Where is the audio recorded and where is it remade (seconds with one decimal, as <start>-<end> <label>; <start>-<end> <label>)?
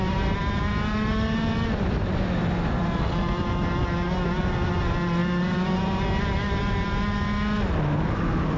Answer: 0.0-8.6 recorded